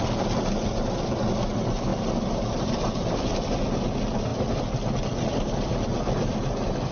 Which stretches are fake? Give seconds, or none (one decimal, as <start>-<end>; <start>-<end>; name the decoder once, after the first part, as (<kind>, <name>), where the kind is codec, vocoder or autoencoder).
none